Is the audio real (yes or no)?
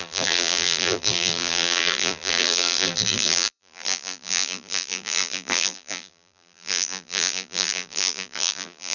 no